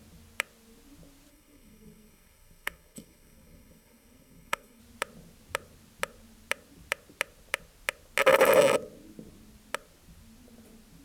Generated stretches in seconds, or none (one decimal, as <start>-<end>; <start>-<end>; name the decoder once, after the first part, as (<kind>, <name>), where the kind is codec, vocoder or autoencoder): 1.3-4.8 (codec, SNAC)